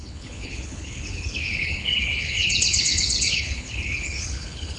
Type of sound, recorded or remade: remade